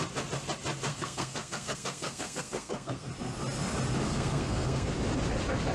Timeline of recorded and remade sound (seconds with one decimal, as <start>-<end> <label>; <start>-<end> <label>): 0.0-0.9 recorded; 0.9-3.1 remade; 3.1-4.1 recorded; 4.1-4.9 remade; 4.9-5.7 recorded